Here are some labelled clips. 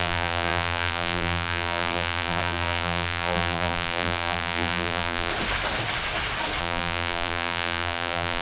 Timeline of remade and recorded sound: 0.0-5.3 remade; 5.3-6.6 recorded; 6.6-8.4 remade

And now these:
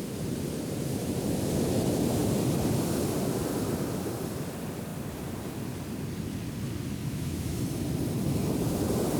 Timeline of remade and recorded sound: 0.0-7.0 recorded; 7.0-7.6 remade; 7.6-9.2 recorded

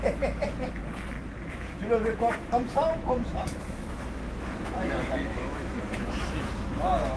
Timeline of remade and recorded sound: 0.0-0.8 remade; 0.8-1.5 recorded; 1.5-7.2 remade

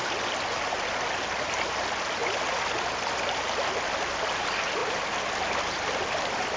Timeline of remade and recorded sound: 0.0-6.6 recorded

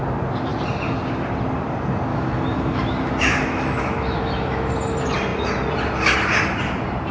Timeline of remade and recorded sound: 0.0-2.1 recorded; 2.1-4.7 remade; 4.7-7.1 recorded

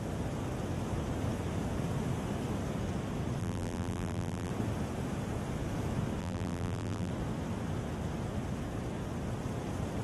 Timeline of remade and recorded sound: 0.0-3.4 recorded; 3.4-4.5 remade; 4.5-6.2 recorded; 6.2-7.1 remade; 7.1-10.0 recorded

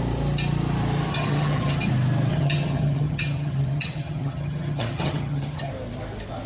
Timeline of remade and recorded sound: 0.0-1.1 recorded; 1.1-1.9 remade; 1.9-2.3 recorded; 2.3-5.7 remade; 5.7-6.5 recorded